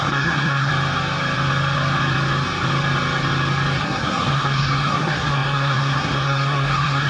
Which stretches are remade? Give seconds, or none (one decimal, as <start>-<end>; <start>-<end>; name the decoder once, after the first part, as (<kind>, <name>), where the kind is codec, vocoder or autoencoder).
0.0-0.7 (codec, SNAC); 3.8-7.1

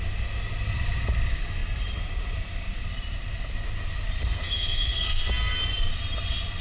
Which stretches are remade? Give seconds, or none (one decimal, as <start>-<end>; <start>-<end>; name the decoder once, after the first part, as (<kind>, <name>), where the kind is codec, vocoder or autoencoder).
4.2-5.3 (codec, SNAC)

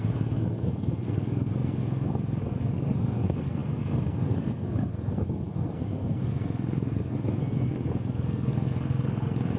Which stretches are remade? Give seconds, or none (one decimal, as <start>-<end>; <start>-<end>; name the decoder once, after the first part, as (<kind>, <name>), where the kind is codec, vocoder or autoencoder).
0.0-9.6 (codec, SNAC)

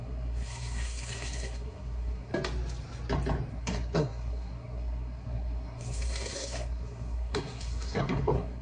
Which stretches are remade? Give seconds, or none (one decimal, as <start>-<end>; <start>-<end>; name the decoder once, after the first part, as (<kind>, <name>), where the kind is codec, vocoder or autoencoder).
0.0-2.3 (codec, SNAC); 3.5-8.6

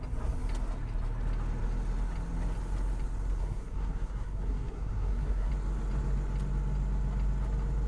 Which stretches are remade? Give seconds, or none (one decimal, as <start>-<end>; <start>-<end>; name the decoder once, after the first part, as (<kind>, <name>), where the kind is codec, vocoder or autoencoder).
3.4-5.5 (codec, SNAC)

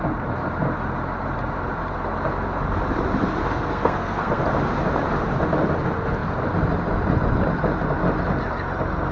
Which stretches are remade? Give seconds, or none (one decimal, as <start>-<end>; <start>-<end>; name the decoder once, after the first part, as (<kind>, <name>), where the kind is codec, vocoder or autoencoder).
3.4-4.4 (codec, SNAC)

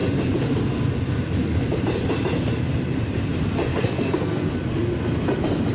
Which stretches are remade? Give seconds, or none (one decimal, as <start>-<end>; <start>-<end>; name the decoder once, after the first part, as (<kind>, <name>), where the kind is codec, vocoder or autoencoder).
3.7-4.5 (codec, SNAC)